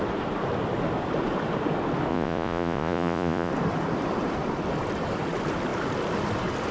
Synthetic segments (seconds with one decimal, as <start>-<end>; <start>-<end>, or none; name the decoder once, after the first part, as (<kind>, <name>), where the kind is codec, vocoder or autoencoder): 2.1-3.5 (vocoder, Vocos)